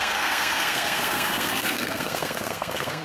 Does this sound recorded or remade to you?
remade